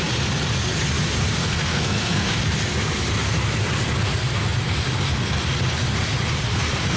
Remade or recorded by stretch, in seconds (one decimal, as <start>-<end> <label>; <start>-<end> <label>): 0.0-1.4 recorded; 1.4-2.4 remade; 2.4-7.0 recorded